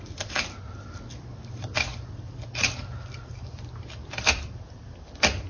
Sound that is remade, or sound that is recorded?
recorded